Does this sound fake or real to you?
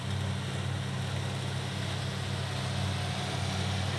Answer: real